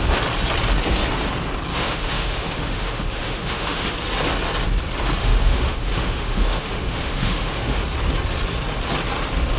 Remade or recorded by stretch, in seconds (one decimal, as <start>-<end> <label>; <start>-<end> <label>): 0.0-1.7 recorded; 1.7-3.9 remade; 3.9-5.2 recorded; 5.2-7.8 remade; 7.8-9.6 recorded